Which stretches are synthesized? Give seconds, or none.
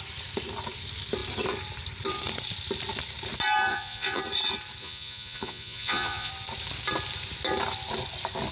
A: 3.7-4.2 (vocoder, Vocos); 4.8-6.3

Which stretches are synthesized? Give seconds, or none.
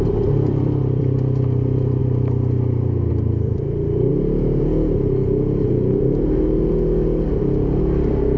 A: 0.0-2.0 (vocoder, BigVGAN v2); 3.1-4.1; 7.8-8.4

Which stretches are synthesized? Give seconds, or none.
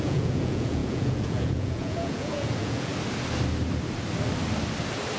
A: 0.0-2.9 (vocoder, Vocos)